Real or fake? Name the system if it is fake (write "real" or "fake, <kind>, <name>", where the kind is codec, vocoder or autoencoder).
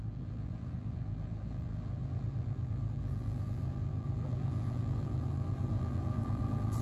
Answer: fake, vocoder, BigVGAN v2